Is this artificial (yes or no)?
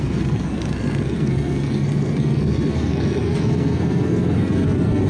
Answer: yes